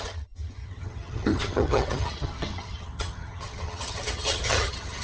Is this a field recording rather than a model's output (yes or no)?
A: no